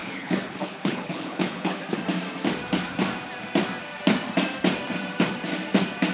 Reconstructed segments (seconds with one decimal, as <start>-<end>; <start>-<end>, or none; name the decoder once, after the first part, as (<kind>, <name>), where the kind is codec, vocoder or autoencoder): 0.0-1.8 (codec, HILCodec)